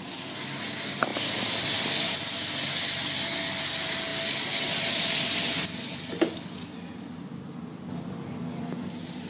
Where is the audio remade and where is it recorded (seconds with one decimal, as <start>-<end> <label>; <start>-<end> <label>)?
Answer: 0.0-9.3 recorded